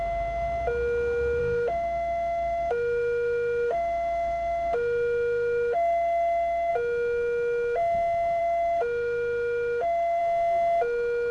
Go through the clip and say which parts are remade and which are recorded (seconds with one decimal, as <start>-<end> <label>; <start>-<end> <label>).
0.0-1.4 recorded; 1.4-6.7 remade; 6.7-8.4 recorded; 8.4-10.2 remade; 10.2-11.3 recorded

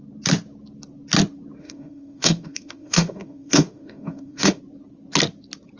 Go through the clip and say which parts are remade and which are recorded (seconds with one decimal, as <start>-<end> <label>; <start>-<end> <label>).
0.0-1.6 recorded; 1.6-4.6 remade; 4.6-5.8 recorded

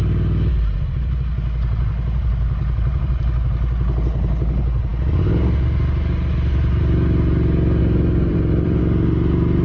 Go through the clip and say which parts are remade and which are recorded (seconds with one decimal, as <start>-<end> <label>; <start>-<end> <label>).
0.0-2.6 recorded; 2.6-3.1 remade; 3.1-7.8 recorded; 7.8-8.8 remade; 8.8-9.6 recorded

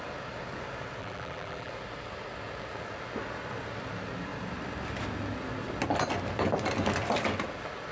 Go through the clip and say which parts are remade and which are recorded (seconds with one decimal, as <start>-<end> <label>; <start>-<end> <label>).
0.0-1.0 recorded; 1.0-1.7 remade; 1.7-7.9 recorded

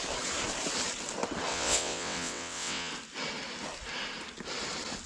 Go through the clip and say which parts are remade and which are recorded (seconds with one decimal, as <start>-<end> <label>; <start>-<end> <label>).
0.0-1.5 recorded; 1.5-2.9 remade; 2.9-5.1 recorded